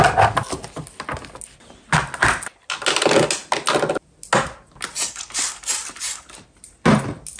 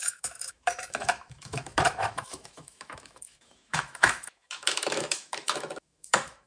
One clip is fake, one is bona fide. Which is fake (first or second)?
second